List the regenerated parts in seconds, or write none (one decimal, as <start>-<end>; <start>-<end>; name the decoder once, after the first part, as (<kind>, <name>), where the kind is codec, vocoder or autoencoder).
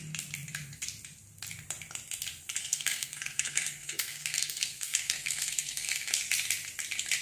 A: 2.6-6.1 (codec, SNAC)